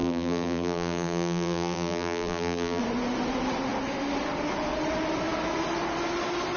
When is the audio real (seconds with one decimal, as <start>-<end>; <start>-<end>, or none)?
2.8-6.6